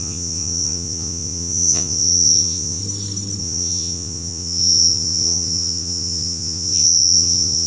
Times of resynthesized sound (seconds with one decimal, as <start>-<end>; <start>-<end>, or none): 0.0-2.8; 3.4-7.7